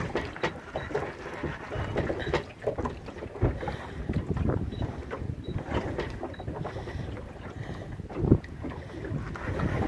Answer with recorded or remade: recorded